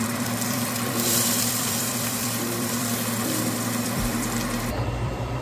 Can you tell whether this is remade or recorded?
remade